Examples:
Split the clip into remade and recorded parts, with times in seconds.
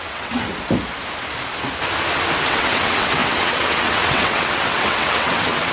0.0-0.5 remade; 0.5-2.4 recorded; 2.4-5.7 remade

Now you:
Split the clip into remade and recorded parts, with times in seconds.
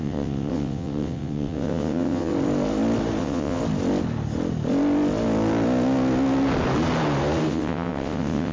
0.0-2.3 remade; 2.3-3.2 recorded; 3.2-3.6 remade; 3.6-7.5 recorded; 7.5-8.5 remade